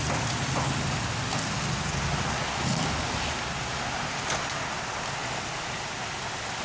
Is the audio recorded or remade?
recorded